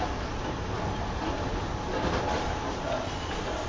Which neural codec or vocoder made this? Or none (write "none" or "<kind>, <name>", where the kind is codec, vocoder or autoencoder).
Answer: none